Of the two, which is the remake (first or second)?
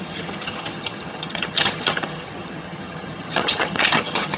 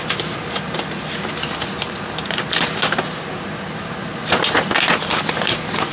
first